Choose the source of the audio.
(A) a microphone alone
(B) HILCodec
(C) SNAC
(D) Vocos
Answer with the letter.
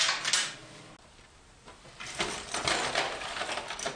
A